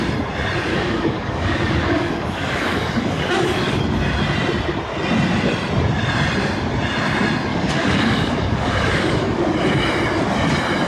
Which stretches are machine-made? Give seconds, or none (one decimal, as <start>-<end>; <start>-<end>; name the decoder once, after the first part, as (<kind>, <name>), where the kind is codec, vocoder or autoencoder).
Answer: 0.7-3.8 (codec, DAC); 7.5-9.4